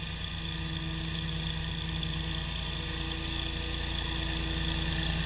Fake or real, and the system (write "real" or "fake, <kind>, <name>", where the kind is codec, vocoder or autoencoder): real